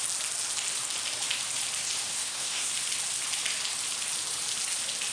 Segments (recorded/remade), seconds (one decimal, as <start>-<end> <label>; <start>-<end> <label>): 0.0-2.1 recorded; 2.1-2.7 remade; 2.7-5.1 recorded